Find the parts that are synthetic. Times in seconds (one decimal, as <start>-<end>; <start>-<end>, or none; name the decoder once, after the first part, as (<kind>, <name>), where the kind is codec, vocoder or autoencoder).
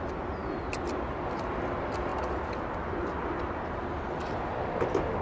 none